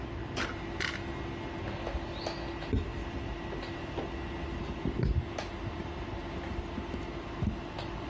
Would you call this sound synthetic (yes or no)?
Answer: no